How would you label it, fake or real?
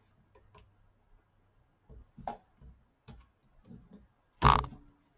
real